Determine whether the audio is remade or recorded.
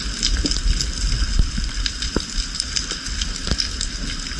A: recorded